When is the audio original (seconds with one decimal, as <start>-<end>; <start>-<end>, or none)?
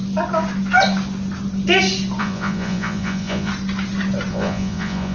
0.0-2.2; 3.5-4.3